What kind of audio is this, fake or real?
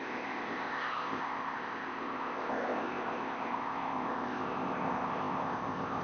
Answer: fake